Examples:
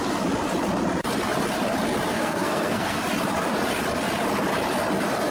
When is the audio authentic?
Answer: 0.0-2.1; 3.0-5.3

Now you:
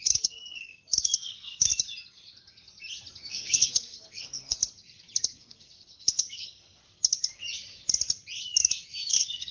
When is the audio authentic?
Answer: 1.7-3.3; 4.6-5.4; 6.8-9.1

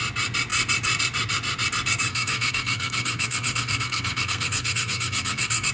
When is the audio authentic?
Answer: 0.0-2.1

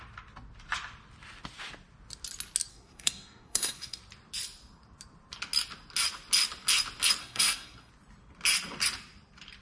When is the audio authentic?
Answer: 0.0-2.7; 4.0-7.2; 7.9-9.6